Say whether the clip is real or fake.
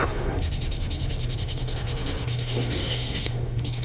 fake